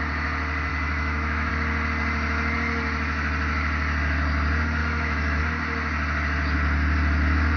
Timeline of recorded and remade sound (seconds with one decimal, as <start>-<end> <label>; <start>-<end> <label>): 0.0-0.7 recorded; 0.7-1.5 remade; 1.5-4.8 recorded; 4.8-5.4 remade; 5.4-7.6 recorded